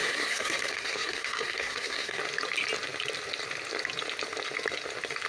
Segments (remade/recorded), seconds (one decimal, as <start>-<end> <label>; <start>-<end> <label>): 0.0-2.2 remade; 2.2-5.3 recorded